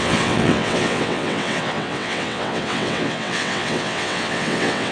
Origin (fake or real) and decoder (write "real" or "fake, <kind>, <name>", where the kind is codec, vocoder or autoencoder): fake, vocoder, WaveNeXt